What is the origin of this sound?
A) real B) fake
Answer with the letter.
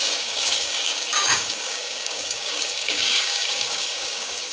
B